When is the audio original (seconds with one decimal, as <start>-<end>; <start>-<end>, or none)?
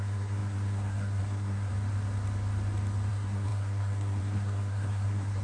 1.7-3.1